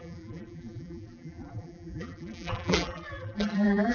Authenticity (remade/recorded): remade